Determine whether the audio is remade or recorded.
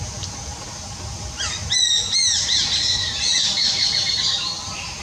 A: recorded